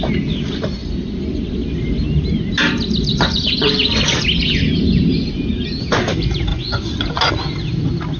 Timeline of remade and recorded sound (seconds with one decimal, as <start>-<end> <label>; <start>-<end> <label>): 0.0-3.1 recorded; 3.1-3.7 remade; 3.7-6.5 recorded; 6.5-7.3 remade; 7.3-8.2 recorded